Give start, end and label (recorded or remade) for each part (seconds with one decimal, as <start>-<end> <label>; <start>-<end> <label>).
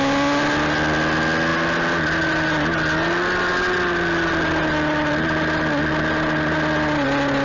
0.0-7.4 recorded